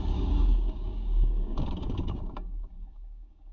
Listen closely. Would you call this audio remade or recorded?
remade